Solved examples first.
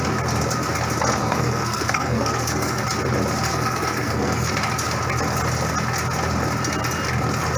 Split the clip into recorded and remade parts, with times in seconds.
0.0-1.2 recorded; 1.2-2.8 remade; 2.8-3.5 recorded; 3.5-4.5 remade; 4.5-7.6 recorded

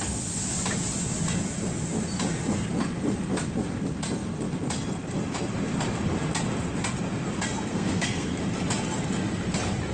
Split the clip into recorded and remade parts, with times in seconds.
0.0-7.7 recorded; 7.7-8.4 remade; 8.4-9.9 recorded

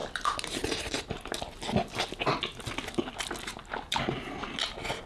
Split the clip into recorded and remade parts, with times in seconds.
0.0-5.1 recorded

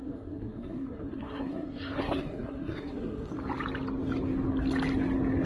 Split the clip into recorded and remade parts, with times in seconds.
0.0-3.3 remade; 3.3-5.5 recorded